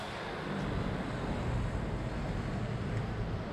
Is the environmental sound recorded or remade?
recorded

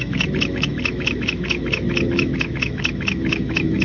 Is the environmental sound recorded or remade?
remade